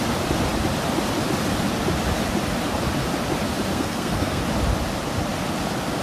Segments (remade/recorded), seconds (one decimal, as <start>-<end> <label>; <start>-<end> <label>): 0.0-3.7 recorded; 3.7-4.4 remade; 4.4-6.0 recorded